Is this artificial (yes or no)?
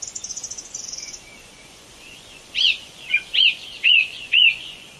yes